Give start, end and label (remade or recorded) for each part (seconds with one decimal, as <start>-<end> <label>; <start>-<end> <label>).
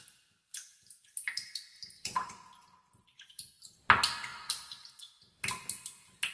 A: 0.0-1.7 recorded; 1.7-3.5 remade; 3.5-4.3 recorded; 4.3-4.9 remade; 4.9-6.3 recorded